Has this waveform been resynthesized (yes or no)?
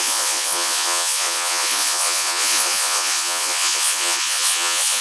yes